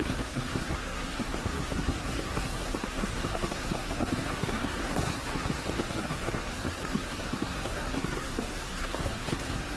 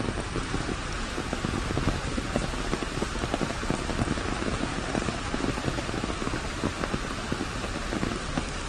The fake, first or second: first